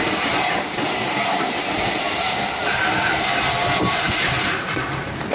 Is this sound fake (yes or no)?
yes